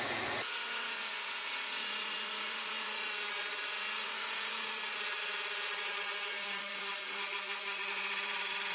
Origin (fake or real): fake